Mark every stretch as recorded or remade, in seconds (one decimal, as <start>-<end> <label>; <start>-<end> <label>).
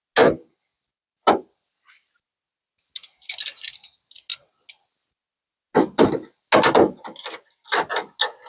0.0-8.5 recorded